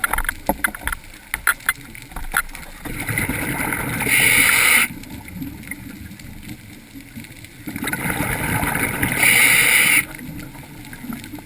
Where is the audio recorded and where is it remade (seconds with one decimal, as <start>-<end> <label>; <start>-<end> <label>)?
0.0-11.5 recorded